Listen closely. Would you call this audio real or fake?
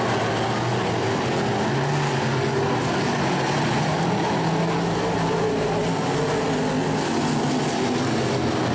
real